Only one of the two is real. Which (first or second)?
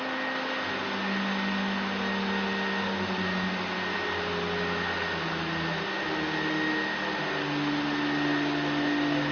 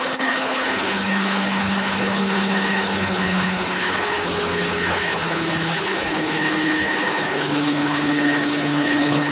first